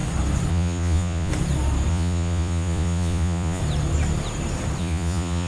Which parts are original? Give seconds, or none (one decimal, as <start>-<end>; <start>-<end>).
0.0-0.5; 1.3-1.9; 3.6-4.8